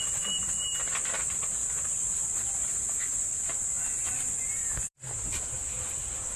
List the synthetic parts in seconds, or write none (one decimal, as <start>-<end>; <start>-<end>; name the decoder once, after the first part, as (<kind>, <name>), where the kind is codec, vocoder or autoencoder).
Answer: 1.6-3.2 (vocoder, BigVGAN v2); 4.6-5.6